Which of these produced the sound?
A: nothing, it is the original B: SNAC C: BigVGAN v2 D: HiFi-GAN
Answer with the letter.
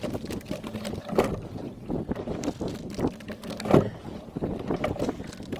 A